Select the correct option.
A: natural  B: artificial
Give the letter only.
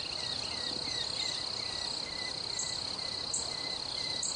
A